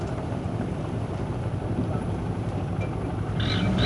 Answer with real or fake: real